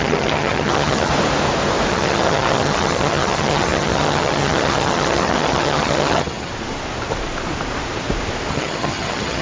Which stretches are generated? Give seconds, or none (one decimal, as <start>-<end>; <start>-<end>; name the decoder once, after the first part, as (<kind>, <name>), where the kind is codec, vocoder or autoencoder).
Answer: 0.0-1.1 (vocoder, HiFi-GAN); 1.9-6.5; 8.5-9.4